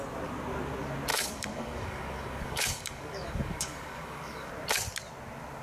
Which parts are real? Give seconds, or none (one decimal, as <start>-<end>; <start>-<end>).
0.0-1.1; 4.5-5.6